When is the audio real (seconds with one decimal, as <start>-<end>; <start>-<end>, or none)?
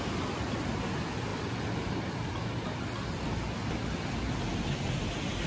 0.0-5.5